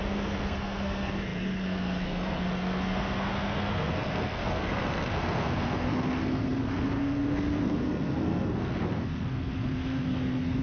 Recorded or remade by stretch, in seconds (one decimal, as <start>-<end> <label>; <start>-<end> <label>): 0.0-10.6 remade

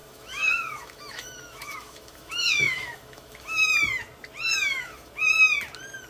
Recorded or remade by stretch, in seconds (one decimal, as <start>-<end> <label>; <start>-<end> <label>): 0.0-3.7 remade; 3.7-4.5 recorded; 4.5-5.1 remade; 5.1-6.1 recorded

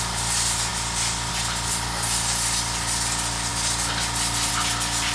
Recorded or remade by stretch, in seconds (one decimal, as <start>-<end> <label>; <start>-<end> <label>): 0.0-5.1 recorded

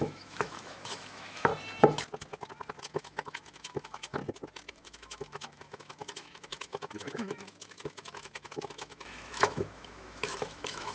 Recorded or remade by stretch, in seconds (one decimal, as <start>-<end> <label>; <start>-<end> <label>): 0.0-1.5 remade; 1.5-2.8 recorded; 2.8-4.2 remade; 4.2-4.7 recorded; 4.7-10.9 remade

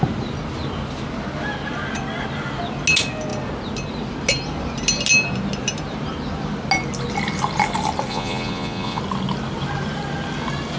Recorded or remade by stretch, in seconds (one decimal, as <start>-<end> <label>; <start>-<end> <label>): 0.0-8.1 recorded; 8.1-9.0 remade; 9.0-10.8 recorded